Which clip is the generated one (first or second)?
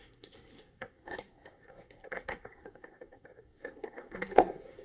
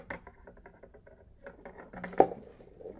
first